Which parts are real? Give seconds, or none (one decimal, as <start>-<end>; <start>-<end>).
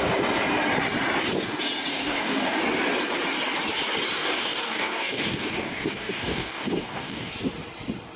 0.0-1.9; 2.6-4.2; 7.3-8.2